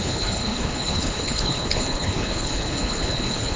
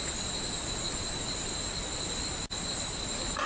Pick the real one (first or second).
second